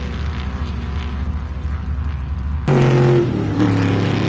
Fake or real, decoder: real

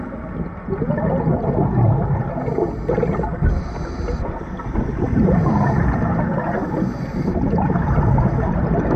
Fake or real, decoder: real